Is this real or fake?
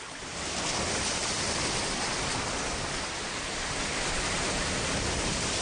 real